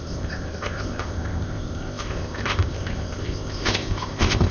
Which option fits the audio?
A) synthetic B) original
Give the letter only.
A